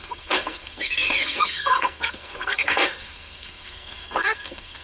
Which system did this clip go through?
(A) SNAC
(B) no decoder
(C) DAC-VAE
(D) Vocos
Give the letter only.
A